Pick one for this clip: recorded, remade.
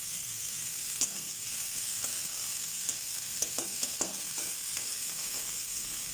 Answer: remade